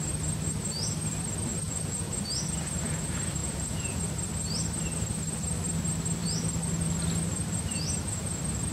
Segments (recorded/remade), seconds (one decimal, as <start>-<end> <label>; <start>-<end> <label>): 0.0-1.5 recorded; 1.5-2.2 remade; 2.2-3.4 recorded; 3.4-4.0 remade; 4.0-8.7 recorded